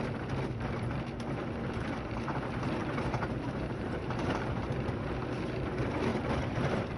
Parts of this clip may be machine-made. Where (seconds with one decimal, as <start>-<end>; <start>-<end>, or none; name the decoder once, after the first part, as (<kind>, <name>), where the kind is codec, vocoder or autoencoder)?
2.8-5.1 (vocoder, BigVGAN v2); 6.1-7.0